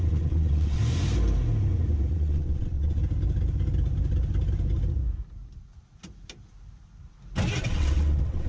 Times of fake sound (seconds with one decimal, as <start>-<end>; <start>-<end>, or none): 0.0-0.8; 2.1-3.0; 7.6-8.5